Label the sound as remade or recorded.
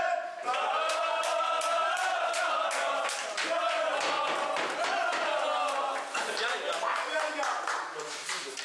recorded